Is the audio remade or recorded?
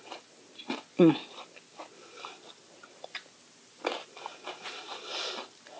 recorded